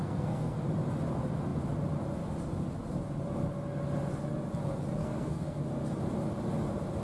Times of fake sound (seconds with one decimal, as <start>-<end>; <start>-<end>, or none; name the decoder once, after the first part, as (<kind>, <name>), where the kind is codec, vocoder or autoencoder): 0.0-0.6 (codec, SNAC); 5.0-5.6